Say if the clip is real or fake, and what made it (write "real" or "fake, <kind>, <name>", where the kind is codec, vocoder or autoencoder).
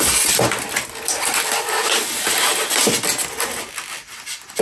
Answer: real